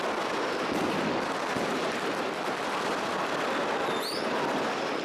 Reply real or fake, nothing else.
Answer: real